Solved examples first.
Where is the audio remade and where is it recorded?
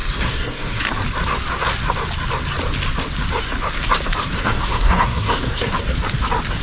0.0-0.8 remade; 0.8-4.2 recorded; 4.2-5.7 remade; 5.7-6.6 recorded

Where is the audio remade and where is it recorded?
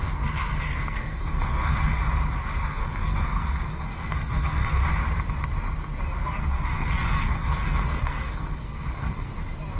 0.0-2.0 remade; 2.0-2.6 recorded; 2.6-4.8 remade; 4.8-6.4 recorded; 6.4-9.3 remade; 9.3-9.8 recorded